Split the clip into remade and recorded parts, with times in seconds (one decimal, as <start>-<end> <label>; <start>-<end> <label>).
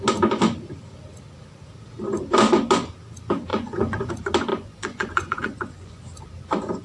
0.0-3.5 recorded; 3.5-4.1 remade; 4.1-4.5 recorded; 4.5-6.0 remade; 6.0-6.8 recorded